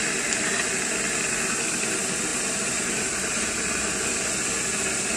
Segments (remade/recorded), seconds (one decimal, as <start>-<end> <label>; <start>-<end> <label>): 0.0-2.3 recorded; 2.3-3.7 remade; 3.7-5.2 recorded